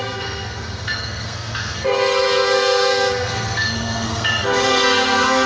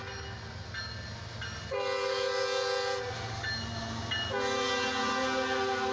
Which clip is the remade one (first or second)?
first